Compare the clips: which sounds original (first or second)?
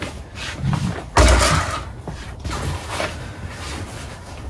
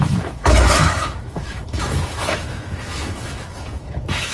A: first